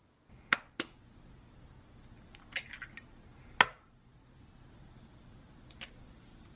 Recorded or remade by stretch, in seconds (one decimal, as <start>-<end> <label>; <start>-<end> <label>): 0.0-6.6 recorded